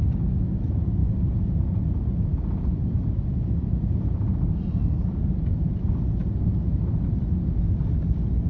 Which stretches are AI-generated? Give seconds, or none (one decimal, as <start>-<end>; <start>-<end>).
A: 6.2-6.8

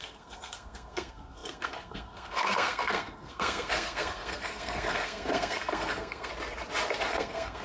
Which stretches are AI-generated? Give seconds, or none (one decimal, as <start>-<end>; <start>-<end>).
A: 0.0-6.3; 7.1-7.6

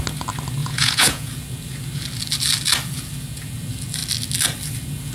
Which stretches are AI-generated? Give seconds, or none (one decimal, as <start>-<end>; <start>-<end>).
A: 0.6-1.3

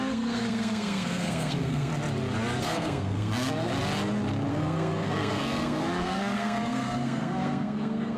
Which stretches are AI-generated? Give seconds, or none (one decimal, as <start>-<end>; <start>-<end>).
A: 0.0-1.9; 2.6-3.7; 4.5-8.2

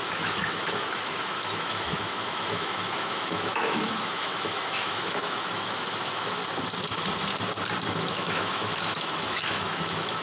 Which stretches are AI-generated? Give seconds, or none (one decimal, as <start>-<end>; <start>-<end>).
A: 0.0-6.4; 7.9-10.2

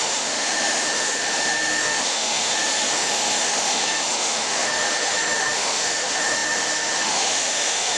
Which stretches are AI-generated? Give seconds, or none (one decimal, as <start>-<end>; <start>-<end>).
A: 0.0-8.0

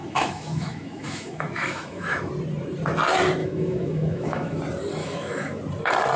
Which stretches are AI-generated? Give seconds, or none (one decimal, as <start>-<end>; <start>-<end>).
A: 0.0-2.3; 3.4-4.6; 5.0-5.6